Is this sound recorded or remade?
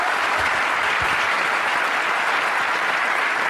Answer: recorded